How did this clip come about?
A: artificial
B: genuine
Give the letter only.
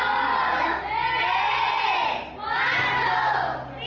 B